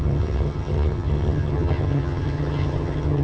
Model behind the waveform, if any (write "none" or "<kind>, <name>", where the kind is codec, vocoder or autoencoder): vocoder, HiFi-GAN